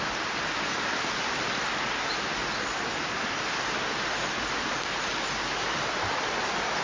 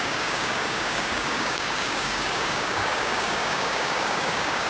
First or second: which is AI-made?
second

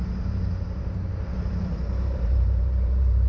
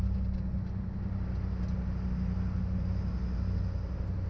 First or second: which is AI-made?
first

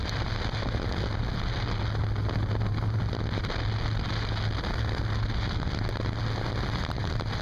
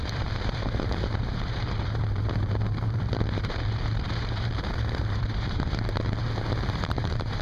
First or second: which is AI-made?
second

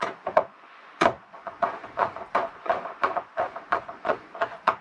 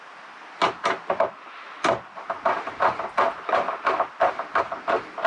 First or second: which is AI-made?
first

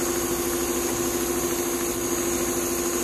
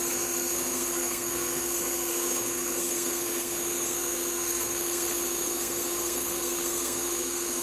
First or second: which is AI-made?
second